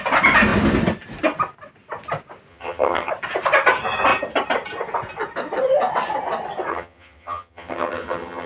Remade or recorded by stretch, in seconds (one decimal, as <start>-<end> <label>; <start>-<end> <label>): 0.0-2.5 recorded; 2.5-3.1 remade; 3.1-6.7 recorded; 6.7-8.5 remade